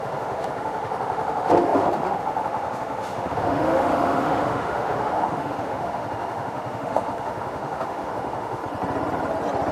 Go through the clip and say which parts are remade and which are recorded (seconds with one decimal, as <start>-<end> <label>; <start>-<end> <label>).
0.0-8.6 remade; 8.6-9.7 recorded